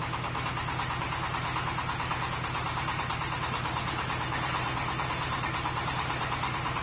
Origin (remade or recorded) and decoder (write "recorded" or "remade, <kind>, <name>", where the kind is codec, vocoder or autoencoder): recorded